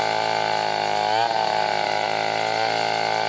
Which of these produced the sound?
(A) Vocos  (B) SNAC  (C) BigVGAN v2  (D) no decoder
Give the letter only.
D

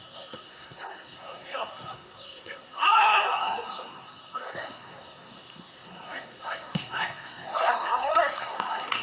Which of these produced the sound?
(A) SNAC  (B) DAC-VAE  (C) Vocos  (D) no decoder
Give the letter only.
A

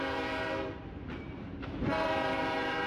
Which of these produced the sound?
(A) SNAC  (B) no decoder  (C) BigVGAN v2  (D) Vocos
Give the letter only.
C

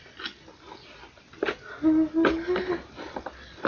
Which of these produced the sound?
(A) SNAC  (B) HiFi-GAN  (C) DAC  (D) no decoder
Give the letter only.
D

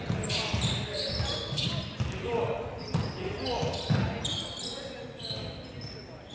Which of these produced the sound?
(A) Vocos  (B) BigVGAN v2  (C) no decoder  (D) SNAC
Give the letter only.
C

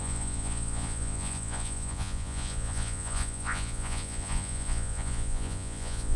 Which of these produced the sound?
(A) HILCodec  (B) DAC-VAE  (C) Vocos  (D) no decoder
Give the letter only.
C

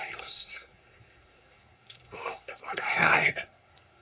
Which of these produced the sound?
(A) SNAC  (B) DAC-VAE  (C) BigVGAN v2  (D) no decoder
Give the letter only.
A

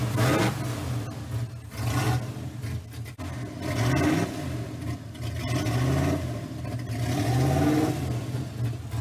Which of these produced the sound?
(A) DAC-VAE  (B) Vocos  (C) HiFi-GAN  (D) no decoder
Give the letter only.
D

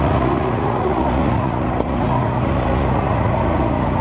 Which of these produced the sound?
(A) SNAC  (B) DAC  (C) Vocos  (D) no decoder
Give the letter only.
C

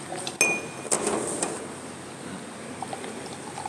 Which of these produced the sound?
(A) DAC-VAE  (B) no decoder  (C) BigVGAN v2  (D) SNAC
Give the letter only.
B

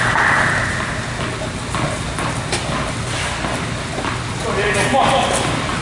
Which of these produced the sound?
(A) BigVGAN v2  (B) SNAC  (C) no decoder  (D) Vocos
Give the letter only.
C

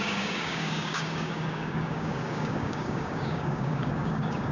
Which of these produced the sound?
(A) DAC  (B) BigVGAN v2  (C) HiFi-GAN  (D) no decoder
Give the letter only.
A